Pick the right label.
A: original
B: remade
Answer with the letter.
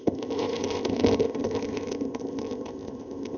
B